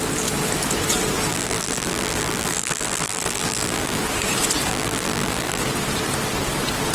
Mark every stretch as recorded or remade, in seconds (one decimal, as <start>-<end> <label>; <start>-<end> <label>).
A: 0.0-1.3 recorded; 1.3-4.0 remade; 4.0-4.7 recorded; 4.7-5.6 remade; 5.6-6.9 recorded